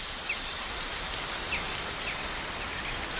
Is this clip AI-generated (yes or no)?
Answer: no